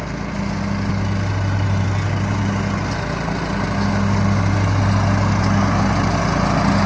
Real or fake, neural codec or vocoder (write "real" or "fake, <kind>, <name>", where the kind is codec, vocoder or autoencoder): real